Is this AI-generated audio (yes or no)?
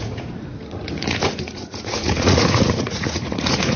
yes